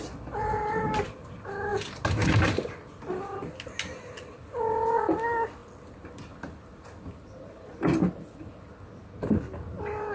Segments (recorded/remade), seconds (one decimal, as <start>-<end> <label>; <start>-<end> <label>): 0.0-10.1 recorded